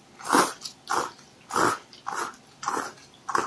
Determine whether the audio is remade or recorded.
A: recorded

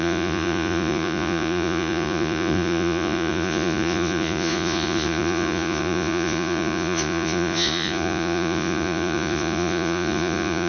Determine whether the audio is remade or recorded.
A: remade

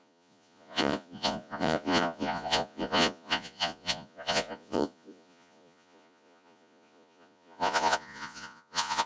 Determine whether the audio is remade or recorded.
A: remade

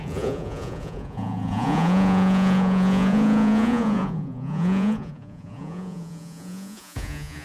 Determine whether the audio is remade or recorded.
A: remade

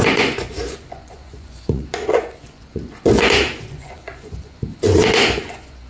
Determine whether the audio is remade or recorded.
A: remade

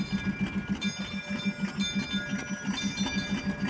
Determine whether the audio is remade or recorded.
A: recorded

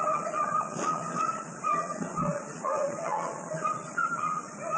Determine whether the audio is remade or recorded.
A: remade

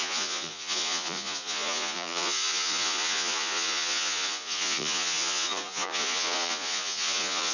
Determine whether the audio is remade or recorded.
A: remade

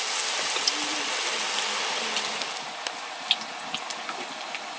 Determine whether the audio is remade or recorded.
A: recorded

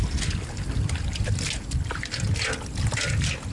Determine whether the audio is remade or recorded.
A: recorded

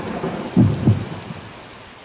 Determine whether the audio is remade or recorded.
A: recorded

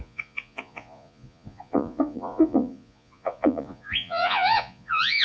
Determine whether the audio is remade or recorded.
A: remade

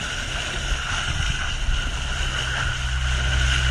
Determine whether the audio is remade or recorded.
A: recorded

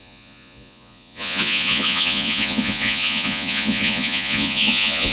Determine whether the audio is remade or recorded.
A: remade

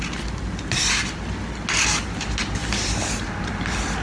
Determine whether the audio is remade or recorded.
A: recorded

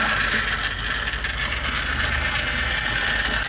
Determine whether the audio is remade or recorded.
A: recorded